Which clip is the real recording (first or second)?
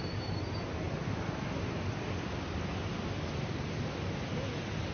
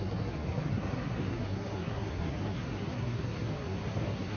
first